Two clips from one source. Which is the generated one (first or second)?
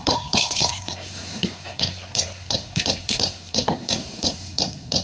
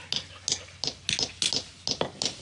first